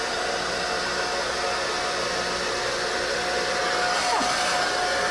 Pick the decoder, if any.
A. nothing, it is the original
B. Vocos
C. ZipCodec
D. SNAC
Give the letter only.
A